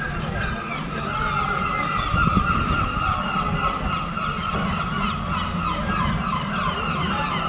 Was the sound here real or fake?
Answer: real